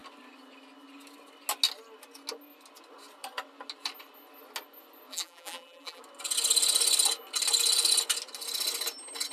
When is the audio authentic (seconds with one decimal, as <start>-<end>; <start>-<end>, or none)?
0.0-5.1; 6.0-9.3